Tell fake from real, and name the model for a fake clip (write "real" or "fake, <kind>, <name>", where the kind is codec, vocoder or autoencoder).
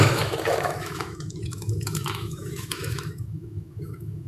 fake, autoencoder, DAC-VAE